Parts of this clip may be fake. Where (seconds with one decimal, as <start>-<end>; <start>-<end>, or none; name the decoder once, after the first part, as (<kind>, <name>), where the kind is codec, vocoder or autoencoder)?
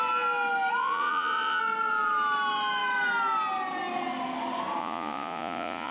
0.8-1.6 (vocoder, Vocos); 4.8-5.9